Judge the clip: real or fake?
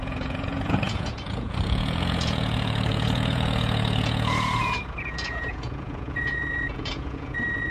fake